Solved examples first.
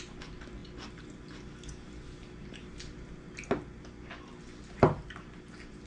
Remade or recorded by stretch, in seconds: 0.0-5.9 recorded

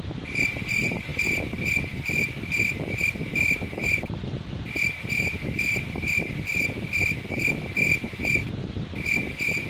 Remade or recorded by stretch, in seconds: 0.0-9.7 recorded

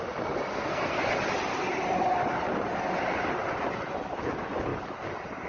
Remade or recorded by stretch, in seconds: 0.0-0.5 recorded; 0.5-1.1 remade; 1.1-5.5 recorded

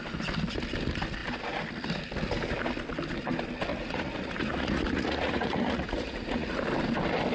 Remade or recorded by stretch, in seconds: 0.0-3.7 recorded; 3.7-6.6 remade; 6.6-7.3 recorded